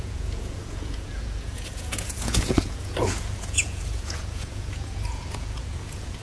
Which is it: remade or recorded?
remade